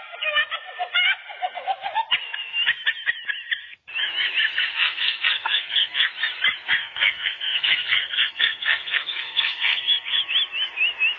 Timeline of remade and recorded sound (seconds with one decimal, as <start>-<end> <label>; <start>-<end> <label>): 0.0-4.7 recorded; 4.7-6.1 remade; 6.1-6.8 recorded; 6.8-10.2 remade; 10.2-11.2 recorded